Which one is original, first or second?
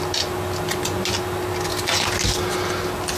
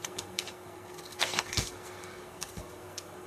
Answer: first